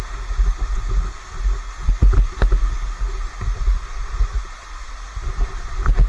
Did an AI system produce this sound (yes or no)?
no